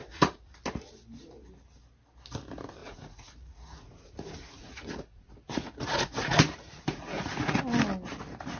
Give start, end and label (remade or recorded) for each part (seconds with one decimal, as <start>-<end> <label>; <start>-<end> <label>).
0.0-0.6 remade; 0.6-2.8 recorded; 2.8-7.6 remade; 7.6-8.6 recorded